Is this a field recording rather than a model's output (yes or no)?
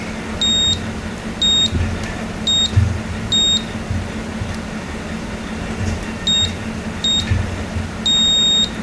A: yes